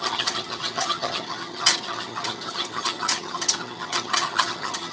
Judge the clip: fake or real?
fake